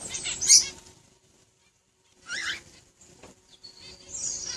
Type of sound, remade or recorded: remade